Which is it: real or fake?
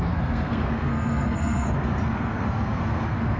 fake